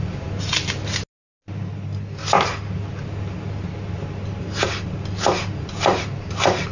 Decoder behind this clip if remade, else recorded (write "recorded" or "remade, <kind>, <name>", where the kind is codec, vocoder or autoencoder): recorded